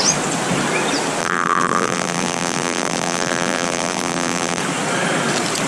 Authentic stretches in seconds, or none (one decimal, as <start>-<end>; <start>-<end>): 0.0-1.2; 4.6-5.7